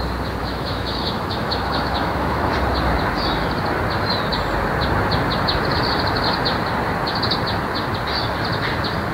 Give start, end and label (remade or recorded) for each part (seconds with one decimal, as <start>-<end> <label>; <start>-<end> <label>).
0.0-0.4 recorded; 0.4-2.5 remade; 2.5-9.1 recorded